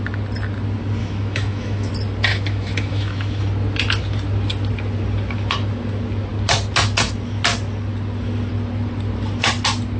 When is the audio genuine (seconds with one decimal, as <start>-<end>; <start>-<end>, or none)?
0.0-1.0; 1.9-2.3; 3.4-10.0